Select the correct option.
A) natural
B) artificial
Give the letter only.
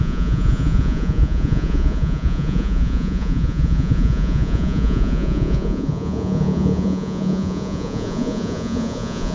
B